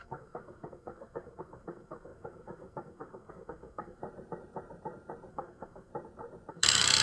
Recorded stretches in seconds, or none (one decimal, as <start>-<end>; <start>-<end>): 4.0-5.3; 5.9-6.5